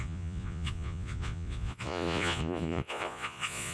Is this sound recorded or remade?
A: remade